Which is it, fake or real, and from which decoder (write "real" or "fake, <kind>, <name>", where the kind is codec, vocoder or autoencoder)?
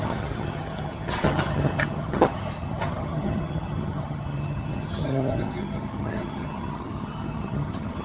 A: fake, vocoder, HiFi-GAN